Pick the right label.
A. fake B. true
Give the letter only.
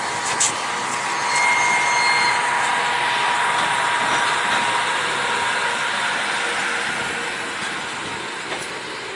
B